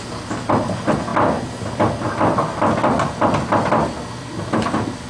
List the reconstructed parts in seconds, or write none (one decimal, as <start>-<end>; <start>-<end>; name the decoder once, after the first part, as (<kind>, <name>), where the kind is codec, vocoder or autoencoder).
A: none